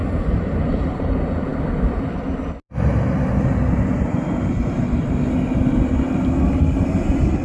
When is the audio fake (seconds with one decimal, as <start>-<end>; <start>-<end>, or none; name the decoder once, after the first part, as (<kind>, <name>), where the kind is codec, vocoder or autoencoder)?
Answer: 0.0-1.1 (vocoder, BigVGAN v2)